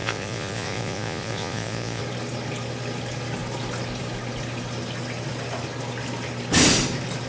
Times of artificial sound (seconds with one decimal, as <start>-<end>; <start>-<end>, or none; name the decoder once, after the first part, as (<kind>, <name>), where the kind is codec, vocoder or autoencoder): 0.0-2.0 (vocoder, Vocos)